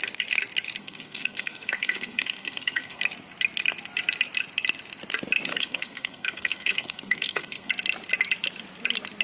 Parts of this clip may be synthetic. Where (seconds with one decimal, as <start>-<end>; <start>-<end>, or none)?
0.8-3.0; 5.5-7.7